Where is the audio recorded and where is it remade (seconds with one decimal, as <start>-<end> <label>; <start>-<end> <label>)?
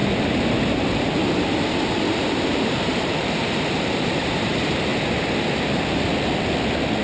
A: 0.0-1.2 recorded; 1.2-4.9 remade; 4.9-5.6 recorded; 5.6-6.1 remade; 6.1-7.0 recorded